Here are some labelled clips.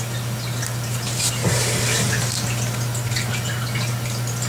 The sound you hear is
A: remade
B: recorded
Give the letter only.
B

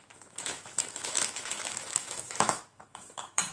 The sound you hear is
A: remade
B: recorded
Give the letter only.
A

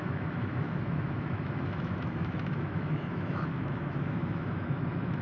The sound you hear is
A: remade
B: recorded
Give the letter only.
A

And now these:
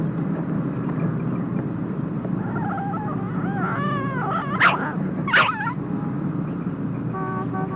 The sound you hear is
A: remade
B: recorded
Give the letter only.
B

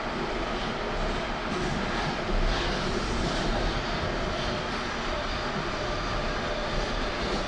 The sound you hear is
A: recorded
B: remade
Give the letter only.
A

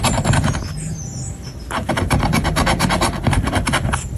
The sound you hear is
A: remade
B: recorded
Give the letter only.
B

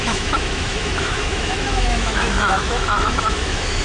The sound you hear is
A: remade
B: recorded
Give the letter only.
A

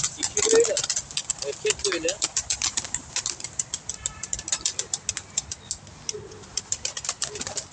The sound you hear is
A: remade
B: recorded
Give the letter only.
B